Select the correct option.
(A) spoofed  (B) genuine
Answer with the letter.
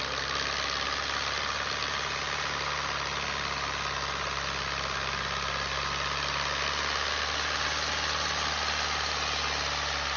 B